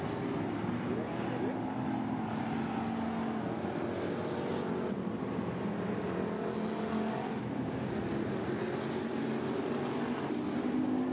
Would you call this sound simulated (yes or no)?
no